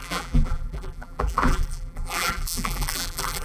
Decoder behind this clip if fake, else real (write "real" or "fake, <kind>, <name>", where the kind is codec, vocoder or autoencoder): fake, vocoder, BigVGAN v2